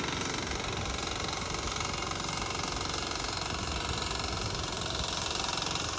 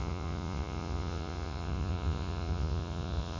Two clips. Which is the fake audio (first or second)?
second